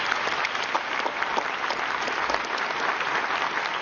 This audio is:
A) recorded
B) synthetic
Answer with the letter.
A